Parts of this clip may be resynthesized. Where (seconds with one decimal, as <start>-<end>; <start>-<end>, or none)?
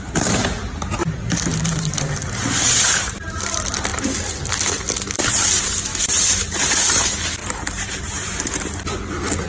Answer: 1.5-3.4; 5.9-7.0; 7.4-8.8